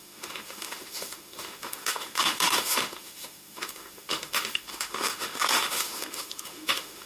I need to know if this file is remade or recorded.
remade